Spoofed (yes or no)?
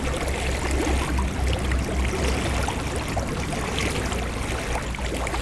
no